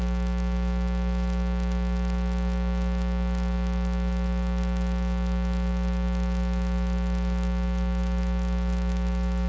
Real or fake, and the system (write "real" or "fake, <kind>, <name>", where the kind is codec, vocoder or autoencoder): real